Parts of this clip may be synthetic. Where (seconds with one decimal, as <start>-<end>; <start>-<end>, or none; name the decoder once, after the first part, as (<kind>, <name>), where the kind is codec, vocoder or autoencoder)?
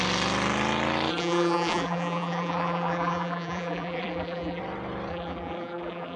1.1-4.6 (vocoder, BigVGAN v2); 5.1-6.2